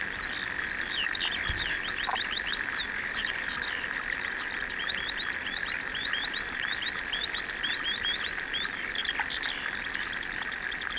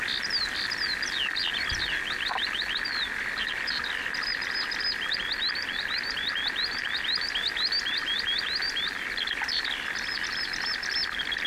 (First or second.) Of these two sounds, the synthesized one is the first